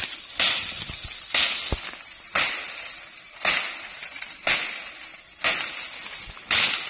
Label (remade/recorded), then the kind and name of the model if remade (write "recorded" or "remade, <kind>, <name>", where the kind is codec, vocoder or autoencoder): recorded